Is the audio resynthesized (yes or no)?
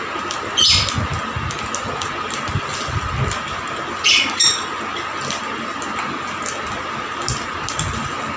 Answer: no